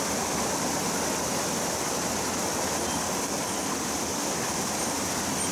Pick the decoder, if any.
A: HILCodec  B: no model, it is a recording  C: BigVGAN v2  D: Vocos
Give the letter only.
B